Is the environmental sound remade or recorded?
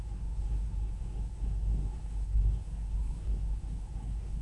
remade